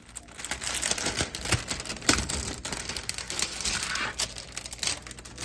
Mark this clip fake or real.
real